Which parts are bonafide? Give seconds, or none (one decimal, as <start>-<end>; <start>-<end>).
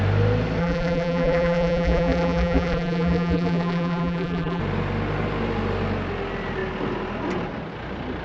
0.0-0.6; 4.6-8.2